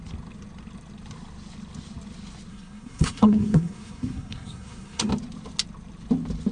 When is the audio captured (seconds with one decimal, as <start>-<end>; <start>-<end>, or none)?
0.0-2.5; 5.1-6.5